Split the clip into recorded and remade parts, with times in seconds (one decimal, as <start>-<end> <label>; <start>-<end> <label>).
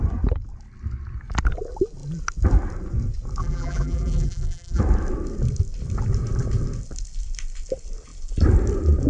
0.0-3.4 recorded; 3.4-4.8 remade; 4.8-9.1 recorded